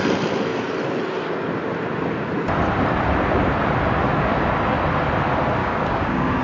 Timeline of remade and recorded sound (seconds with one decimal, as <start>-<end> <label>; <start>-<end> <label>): 0.0-5.6 recorded; 5.6-6.4 remade